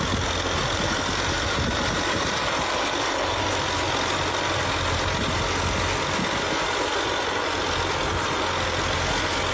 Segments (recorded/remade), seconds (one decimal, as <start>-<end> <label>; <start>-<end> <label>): 0.0-0.6 recorded; 0.6-3.5 remade; 3.5-9.5 recorded

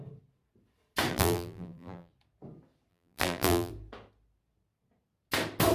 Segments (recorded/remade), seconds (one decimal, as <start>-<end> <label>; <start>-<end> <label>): 0.0-1.1 recorded; 1.1-2.1 remade; 2.1-2.9 recorded; 2.9-3.7 remade; 3.7-5.7 recorded